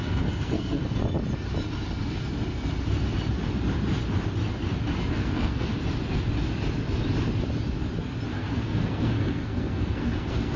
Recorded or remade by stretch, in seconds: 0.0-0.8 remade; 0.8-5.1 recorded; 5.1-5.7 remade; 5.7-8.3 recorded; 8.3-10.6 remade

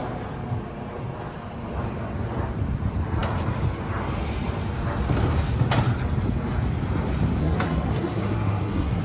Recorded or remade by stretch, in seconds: 0.0-7.4 recorded; 7.4-9.0 remade

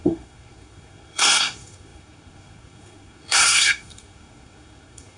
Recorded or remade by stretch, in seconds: 0.0-5.2 remade